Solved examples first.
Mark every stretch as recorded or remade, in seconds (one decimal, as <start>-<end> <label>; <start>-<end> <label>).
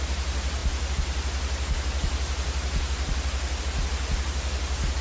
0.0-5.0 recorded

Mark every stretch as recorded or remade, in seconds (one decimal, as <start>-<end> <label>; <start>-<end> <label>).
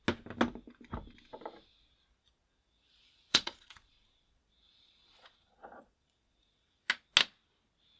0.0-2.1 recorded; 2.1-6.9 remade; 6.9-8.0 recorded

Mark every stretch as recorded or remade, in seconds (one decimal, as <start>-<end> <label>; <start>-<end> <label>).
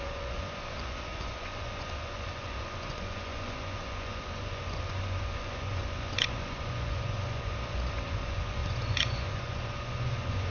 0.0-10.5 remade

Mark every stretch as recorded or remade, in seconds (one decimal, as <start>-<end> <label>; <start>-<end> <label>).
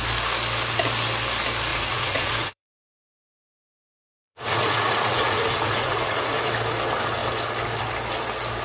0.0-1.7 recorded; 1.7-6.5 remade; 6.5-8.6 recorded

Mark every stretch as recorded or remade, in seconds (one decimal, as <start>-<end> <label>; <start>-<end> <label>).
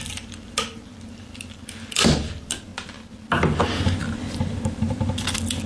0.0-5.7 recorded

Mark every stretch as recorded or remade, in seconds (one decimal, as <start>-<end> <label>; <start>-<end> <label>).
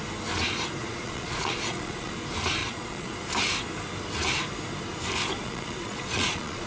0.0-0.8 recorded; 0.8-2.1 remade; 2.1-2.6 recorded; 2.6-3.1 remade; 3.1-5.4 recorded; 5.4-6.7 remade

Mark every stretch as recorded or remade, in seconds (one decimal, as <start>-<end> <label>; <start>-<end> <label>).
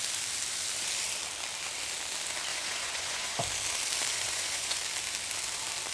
0.0-2.5 recorded; 2.5-3.4 remade; 3.4-4.1 recorded; 4.1-4.8 remade; 4.8-5.9 recorded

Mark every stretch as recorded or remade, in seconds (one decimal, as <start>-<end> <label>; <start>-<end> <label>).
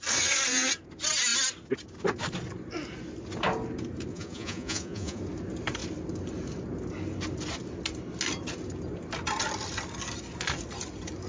0.0-4.1 recorded; 4.1-5.2 remade; 5.2-11.3 recorded